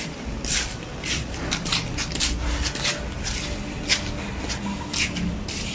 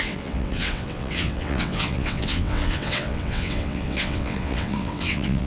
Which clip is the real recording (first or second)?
first